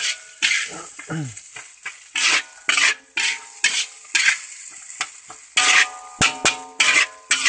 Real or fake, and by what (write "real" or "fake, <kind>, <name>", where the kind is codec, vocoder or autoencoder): real